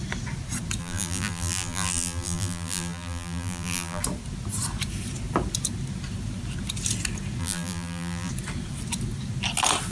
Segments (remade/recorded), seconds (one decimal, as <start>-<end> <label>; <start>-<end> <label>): 0.0-0.8 recorded; 0.8-4.0 remade; 4.0-7.4 recorded; 7.4-8.3 remade; 8.3-9.9 recorded